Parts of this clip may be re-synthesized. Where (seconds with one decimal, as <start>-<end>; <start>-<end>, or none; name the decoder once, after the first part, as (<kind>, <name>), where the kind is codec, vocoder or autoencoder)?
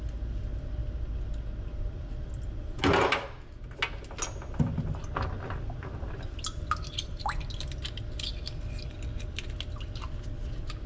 none